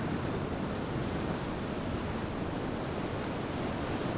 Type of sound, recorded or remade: recorded